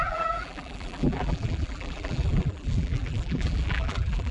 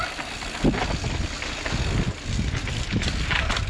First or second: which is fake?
first